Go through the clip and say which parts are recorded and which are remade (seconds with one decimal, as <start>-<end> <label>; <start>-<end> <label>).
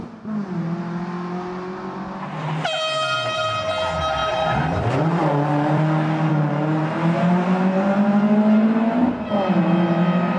0.0-4.2 recorded; 4.2-6.3 remade; 6.3-10.4 recorded